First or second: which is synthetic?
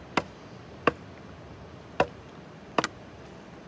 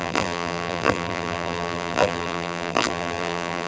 second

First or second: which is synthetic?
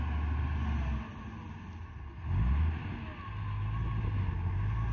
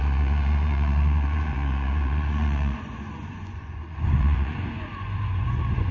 second